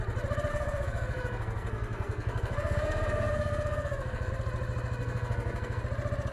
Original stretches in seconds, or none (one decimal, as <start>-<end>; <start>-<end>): 0.0-0.5; 4.3-5.0; 5.8-6.3